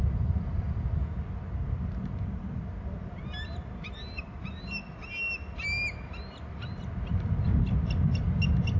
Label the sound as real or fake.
real